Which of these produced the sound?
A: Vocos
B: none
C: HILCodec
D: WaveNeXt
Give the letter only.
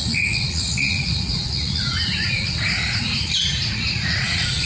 A